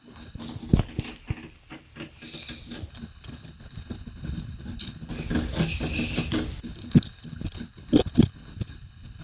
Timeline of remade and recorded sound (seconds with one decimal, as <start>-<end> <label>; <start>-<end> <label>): 0.0-0.4 remade; 0.4-2.9 recorded; 2.9-5.1 remade; 5.1-6.6 recorded; 6.6-9.2 remade